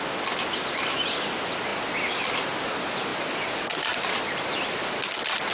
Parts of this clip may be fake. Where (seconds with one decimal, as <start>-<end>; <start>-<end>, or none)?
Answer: none